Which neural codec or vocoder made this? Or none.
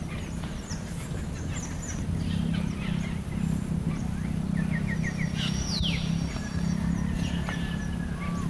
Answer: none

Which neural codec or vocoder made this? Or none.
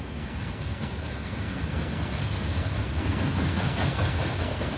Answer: codec, SNAC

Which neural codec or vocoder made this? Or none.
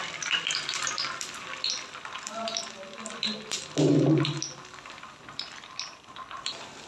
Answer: none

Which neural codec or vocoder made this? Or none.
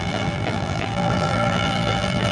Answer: vocoder, BigVGAN v2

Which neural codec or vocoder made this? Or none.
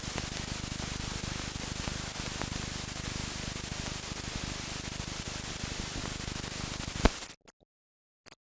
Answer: none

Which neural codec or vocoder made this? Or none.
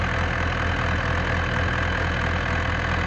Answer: none